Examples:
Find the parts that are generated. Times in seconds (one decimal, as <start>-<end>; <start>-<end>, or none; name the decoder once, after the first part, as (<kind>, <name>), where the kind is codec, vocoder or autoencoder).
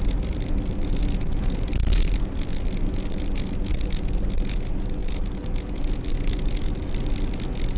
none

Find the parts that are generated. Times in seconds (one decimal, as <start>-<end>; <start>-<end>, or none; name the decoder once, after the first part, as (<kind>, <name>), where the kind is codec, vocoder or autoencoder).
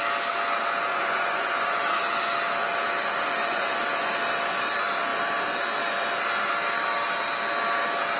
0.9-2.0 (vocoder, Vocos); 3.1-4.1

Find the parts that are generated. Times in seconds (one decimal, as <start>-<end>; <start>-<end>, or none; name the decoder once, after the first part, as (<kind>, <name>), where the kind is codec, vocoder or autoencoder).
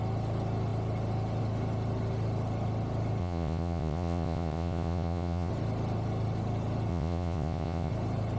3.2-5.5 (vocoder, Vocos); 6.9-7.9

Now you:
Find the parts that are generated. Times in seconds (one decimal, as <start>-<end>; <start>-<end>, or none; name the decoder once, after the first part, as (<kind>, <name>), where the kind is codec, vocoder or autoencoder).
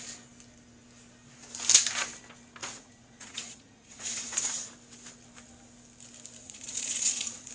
2.6-4.7 (vocoder, Vocos); 6.4-7.5